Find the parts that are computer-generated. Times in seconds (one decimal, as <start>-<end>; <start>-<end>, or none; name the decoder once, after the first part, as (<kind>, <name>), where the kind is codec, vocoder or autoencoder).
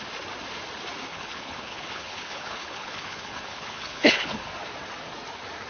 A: 1.1-4.5 (codec, HILCodec)